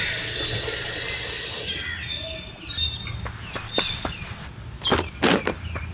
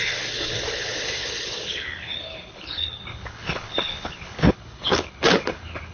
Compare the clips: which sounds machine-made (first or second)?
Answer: second